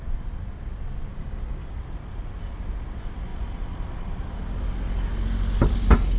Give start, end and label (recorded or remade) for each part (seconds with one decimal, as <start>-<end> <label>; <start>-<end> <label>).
0.0-1.1 recorded; 1.1-1.8 remade; 1.8-6.2 recorded

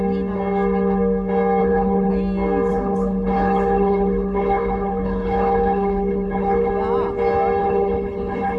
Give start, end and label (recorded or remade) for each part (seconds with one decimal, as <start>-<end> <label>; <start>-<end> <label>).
0.0-1.6 recorded; 1.6-2.1 remade; 2.1-2.7 recorded; 2.7-6.7 remade; 6.7-7.6 recorded; 7.6-8.6 remade